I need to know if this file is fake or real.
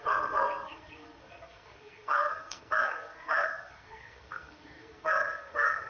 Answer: fake